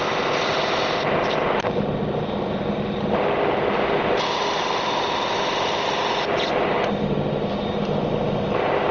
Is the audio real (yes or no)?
yes